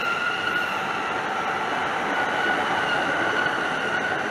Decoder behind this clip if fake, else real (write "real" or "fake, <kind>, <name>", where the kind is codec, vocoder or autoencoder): real